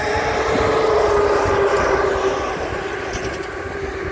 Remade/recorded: recorded